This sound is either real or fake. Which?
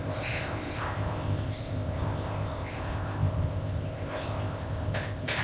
fake